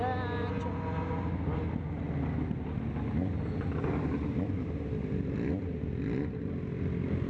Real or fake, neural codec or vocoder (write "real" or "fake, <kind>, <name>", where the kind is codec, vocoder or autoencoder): real